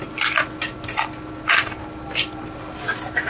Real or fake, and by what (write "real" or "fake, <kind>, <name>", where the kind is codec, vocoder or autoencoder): real